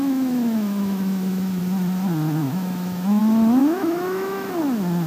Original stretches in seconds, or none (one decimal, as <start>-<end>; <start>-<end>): 1.6-2.4; 3.2-3.6; 4.5-5.1